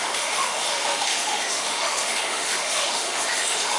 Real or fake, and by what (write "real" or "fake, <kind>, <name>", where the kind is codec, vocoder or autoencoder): fake, autoencoder, DAC-VAE